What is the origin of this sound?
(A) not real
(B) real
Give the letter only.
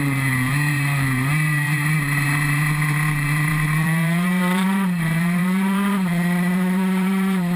A